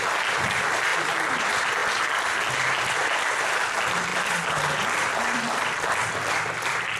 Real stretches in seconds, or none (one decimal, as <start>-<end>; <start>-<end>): 1.8-2.5